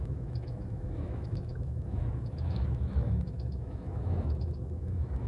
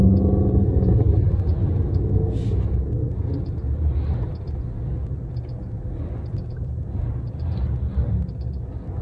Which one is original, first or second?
second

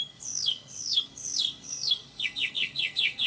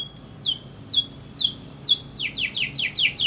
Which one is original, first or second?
second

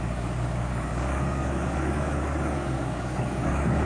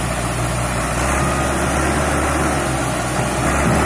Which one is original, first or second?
second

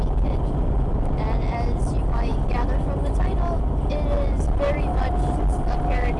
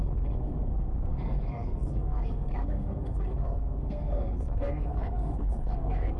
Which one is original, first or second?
first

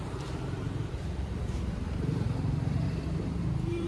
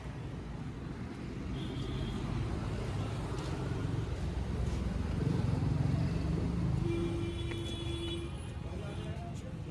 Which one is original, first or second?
second